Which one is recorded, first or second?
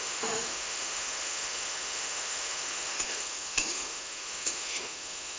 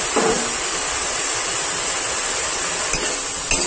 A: second